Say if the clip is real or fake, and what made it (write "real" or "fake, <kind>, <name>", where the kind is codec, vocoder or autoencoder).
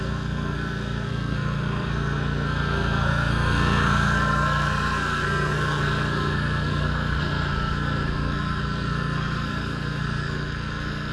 fake, codec, SNAC